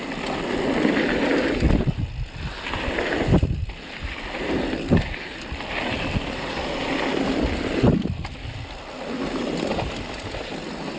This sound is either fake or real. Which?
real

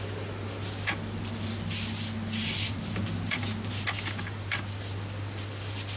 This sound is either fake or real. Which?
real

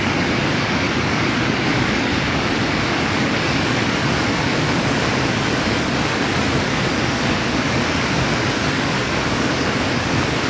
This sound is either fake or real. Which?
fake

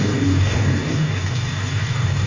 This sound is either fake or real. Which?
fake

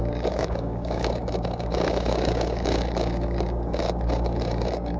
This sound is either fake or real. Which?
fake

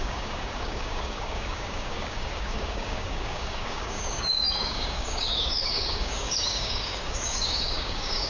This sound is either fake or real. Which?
fake